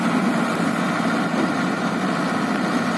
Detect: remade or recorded recorded